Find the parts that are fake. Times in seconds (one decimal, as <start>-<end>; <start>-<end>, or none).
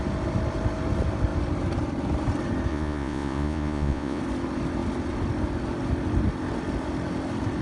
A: 2.7-4.2